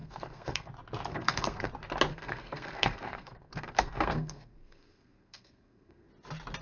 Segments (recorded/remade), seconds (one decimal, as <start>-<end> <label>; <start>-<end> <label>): 0.0-0.7 remade; 0.7-1.1 recorded; 1.1-1.7 remade; 1.7-2.1 recorded; 2.1-6.1 remade; 6.1-6.6 recorded